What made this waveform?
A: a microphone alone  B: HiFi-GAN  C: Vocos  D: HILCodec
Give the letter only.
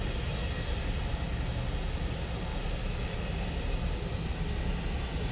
A